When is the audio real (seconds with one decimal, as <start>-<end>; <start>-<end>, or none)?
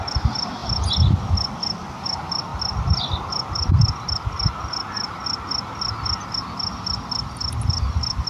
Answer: 0.0-8.3